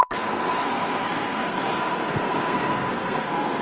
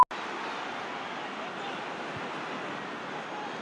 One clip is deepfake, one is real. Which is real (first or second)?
second